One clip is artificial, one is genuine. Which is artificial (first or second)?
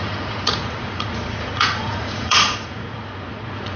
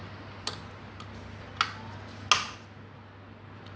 first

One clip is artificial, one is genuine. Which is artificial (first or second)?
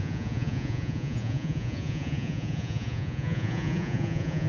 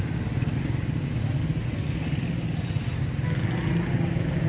first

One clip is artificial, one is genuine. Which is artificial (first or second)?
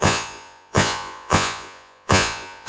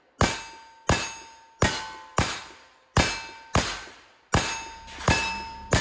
first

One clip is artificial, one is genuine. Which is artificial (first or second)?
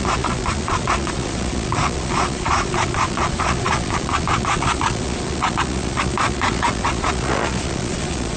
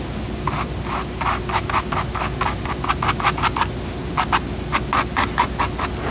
first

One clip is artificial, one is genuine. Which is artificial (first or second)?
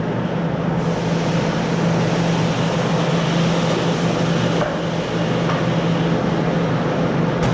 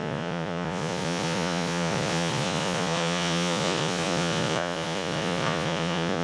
second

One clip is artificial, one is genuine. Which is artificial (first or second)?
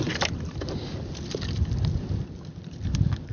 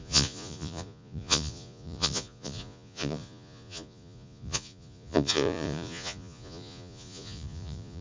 second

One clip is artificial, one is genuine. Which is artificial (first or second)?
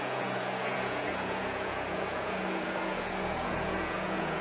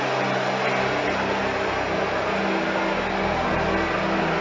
first